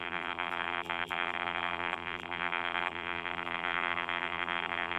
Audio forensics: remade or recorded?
remade